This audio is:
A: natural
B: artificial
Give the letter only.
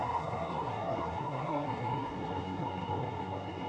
B